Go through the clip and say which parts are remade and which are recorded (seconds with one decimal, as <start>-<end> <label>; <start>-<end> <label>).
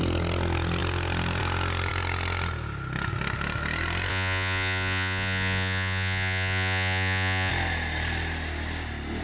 0.0-4.1 recorded; 4.1-7.5 remade; 7.5-9.2 recorded